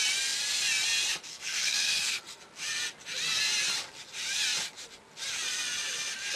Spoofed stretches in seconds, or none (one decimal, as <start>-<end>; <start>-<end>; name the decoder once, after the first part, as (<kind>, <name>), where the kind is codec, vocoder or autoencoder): 1.3-2.2 (codec, SNAC)